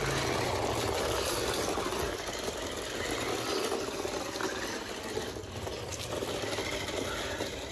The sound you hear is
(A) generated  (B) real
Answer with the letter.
B